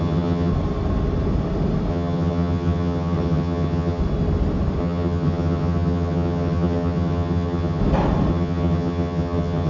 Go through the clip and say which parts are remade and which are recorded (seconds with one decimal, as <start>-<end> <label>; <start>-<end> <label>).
0.0-0.5 remade; 0.5-1.9 recorded; 1.9-4.0 remade; 4.0-4.8 recorded; 4.8-7.8 remade; 7.8-8.3 recorded; 8.3-9.7 remade